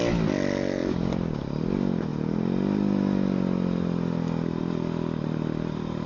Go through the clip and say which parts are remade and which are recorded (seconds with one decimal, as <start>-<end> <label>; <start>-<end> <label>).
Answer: 0.0-6.1 recorded